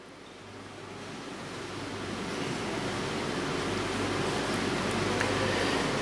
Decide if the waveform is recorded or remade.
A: recorded